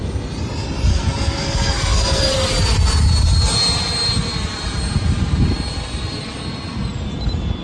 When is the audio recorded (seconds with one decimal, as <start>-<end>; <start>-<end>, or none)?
0.0-0.9; 2.2-7.6